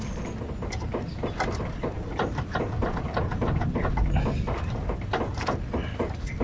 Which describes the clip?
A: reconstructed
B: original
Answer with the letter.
B